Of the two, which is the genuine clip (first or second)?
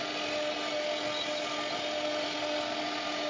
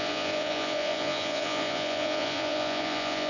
first